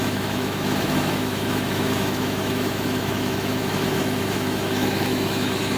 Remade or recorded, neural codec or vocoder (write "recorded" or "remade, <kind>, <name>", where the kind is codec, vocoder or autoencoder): remade, autoencoder, DAC-VAE